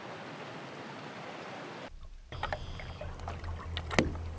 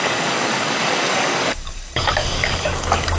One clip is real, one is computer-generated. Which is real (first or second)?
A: first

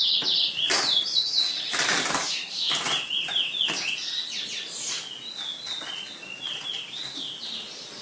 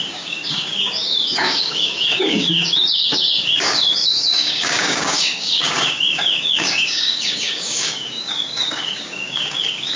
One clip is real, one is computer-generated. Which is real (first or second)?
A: first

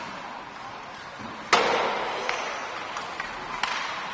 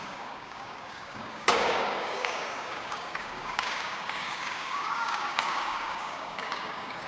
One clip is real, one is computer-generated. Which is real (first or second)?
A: first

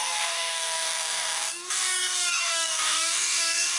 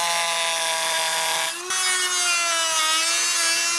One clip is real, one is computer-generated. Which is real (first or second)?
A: second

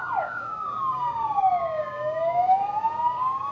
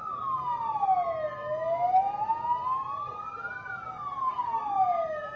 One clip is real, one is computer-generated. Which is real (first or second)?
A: second